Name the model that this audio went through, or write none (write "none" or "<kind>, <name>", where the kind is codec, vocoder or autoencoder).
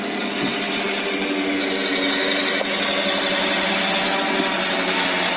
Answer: none